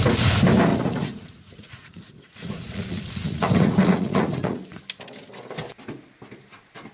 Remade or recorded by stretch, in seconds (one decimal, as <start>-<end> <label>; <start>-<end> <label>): 0.0-0.7 recorded; 0.7-4.8 remade; 4.8-6.9 recorded